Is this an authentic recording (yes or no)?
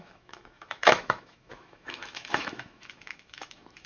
no